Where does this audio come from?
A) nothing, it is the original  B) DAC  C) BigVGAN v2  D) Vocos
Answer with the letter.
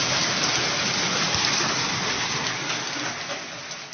A